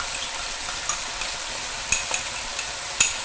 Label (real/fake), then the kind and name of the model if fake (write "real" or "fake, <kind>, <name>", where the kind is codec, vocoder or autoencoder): real